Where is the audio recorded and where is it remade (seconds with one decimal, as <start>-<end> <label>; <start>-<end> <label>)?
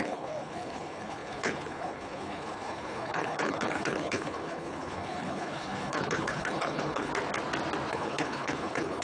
0.0-7.1 remade; 7.1-7.9 recorded; 7.9-9.0 remade